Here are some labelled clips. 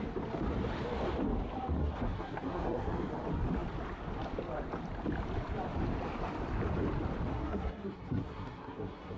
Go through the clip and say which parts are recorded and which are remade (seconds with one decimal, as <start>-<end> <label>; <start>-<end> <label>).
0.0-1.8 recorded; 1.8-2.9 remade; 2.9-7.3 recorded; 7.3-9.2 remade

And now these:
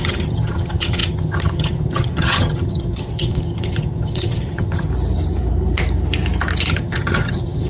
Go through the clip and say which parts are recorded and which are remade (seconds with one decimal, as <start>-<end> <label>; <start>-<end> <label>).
0.0-4.9 remade; 4.9-6.7 recorded; 6.7-7.7 remade

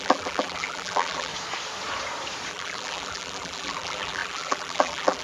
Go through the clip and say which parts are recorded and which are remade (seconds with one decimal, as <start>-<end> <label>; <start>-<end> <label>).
0.0-1.3 remade; 1.3-2.5 recorded; 2.5-5.2 remade